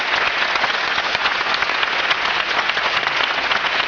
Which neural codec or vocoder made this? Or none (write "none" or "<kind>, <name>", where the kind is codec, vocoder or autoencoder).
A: vocoder, Vocos